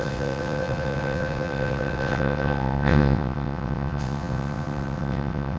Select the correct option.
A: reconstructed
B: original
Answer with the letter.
A